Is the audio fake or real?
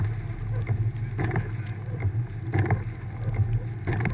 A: real